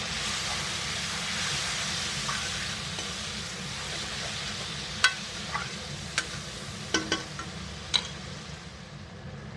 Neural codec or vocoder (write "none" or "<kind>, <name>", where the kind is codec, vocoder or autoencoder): none